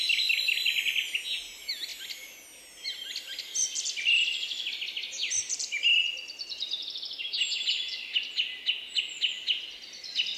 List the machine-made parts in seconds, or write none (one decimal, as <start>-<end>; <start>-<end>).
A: none